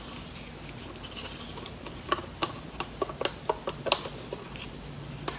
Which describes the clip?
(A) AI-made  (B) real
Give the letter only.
B